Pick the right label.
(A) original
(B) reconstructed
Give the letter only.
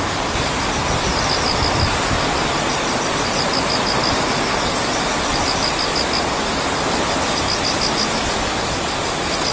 A